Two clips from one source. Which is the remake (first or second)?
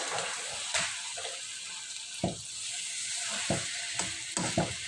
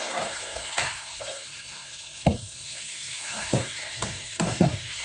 second